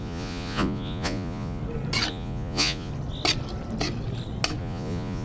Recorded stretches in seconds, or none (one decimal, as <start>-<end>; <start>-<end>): 1.6-2.1; 2.9-4.6